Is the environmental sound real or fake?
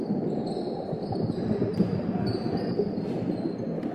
real